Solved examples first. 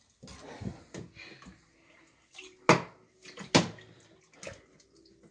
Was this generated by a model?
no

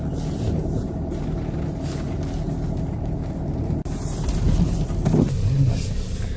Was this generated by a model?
no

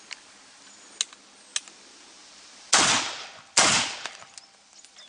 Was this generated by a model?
no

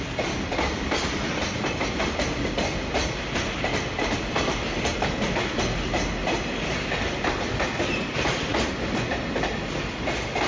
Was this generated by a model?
no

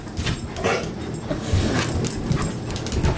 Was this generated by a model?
no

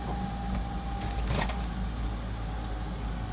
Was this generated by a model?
no